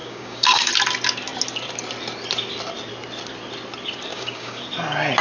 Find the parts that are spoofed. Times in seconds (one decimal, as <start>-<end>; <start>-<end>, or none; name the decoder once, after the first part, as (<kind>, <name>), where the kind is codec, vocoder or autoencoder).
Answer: 0.0-0.7 (codec, DAC); 4.1-4.6